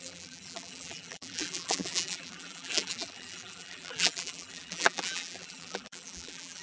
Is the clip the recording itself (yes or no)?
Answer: no